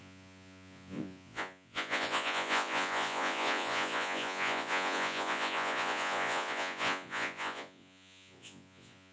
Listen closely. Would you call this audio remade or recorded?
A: remade